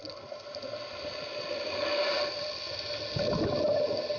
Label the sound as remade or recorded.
recorded